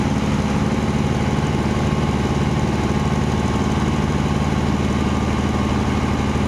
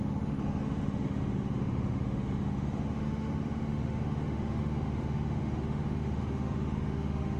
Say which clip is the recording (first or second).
first